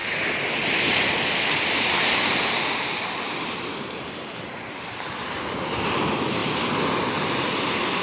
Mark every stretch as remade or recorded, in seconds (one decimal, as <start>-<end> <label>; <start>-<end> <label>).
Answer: 0.0-8.0 recorded